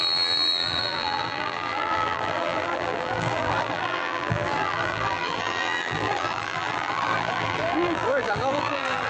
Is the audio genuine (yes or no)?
no